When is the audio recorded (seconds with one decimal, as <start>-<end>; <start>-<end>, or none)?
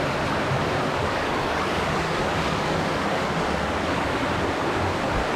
0.0-1.0; 4.2-5.4